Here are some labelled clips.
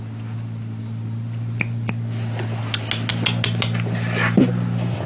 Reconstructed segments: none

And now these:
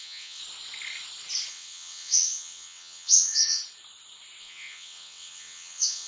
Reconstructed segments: 0.0-0.4 (vocoder, WaveNeXt); 1.5-3.6; 4.4-6.1

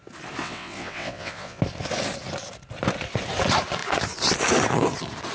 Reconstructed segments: 0.4-1.6 (vocoder, WaveNeXt)